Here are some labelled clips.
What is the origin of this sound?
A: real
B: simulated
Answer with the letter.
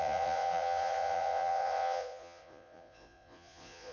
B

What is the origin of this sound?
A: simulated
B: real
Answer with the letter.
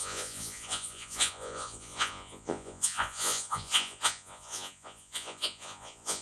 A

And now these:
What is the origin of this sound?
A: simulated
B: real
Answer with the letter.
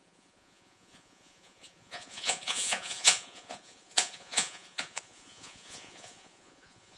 A